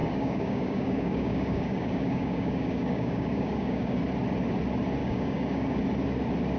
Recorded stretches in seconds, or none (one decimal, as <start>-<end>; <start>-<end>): 4.0-5.0; 5.8-6.6